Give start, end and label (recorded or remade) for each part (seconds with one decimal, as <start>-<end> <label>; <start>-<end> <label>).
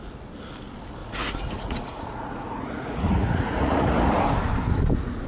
0.0-1.0 recorded; 1.0-4.2 remade; 4.2-5.3 recorded